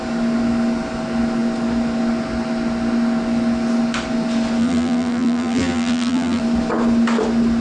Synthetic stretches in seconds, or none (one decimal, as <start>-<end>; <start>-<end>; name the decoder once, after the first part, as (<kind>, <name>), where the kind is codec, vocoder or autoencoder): 4.6-6.4 (vocoder, BigVGAN v2)